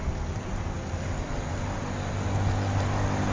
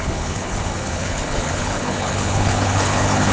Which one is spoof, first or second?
second